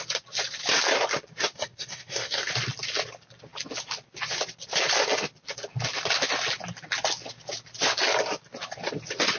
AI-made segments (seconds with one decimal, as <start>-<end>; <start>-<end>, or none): 1.5-2.5